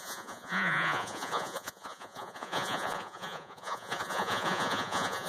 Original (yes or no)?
no